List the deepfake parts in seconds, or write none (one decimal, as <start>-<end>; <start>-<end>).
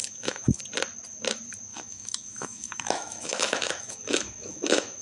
0.0-0.6; 1.7-5.0